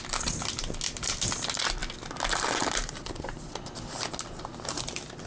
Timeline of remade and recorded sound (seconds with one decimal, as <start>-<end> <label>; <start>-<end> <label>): 0.0-5.3 recorded